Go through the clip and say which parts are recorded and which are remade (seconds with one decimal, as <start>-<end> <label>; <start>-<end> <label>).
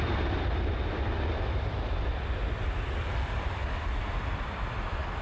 0.0-5.2 recorded